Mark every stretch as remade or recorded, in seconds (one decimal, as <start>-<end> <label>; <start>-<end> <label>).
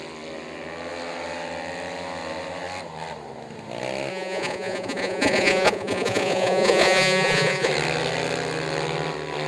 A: 0.0-4.1 recorded; 4.1-7.7 remade; 7.7-9.5 recorded